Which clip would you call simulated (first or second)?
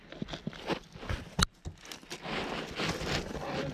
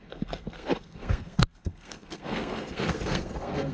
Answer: second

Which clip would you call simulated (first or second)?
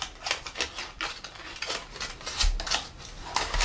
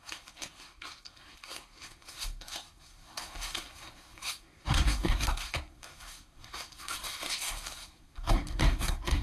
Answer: second